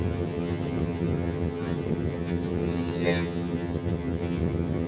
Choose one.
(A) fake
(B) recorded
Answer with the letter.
A